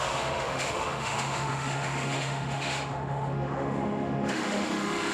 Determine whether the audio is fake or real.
fake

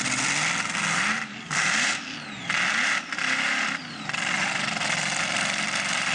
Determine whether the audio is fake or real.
real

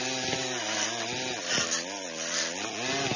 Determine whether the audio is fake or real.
real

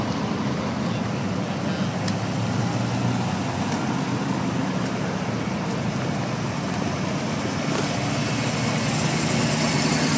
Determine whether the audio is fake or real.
real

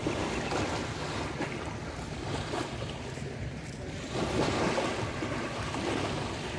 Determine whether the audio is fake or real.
real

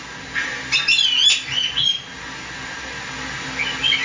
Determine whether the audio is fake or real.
real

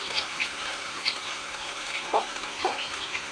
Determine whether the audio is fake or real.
fake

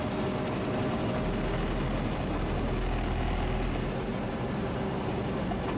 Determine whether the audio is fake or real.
real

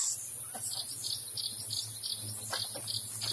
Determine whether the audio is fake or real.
real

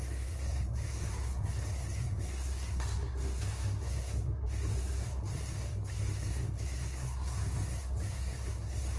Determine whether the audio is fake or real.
fake